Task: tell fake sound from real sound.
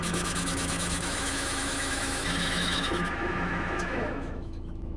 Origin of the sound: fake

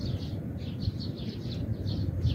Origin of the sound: real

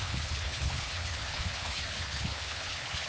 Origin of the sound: fake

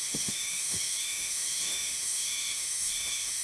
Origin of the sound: fake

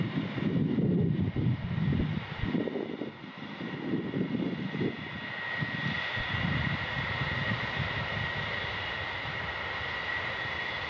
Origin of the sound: real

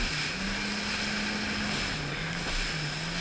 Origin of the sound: real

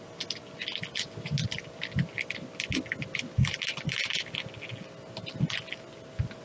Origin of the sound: real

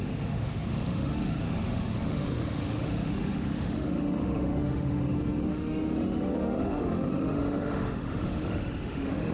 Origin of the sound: fake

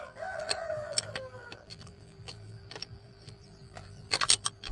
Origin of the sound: fake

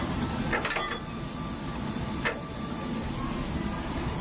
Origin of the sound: real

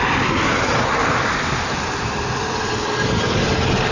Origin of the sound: real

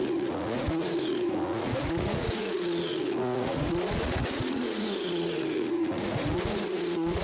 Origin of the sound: fake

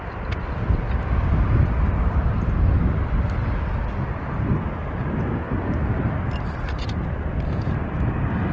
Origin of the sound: real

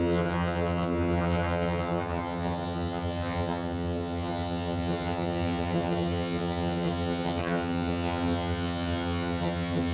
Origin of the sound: fake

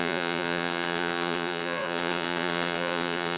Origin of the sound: fake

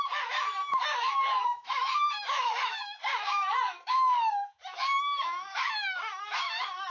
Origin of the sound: fake